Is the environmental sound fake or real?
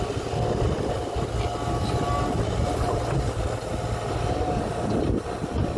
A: real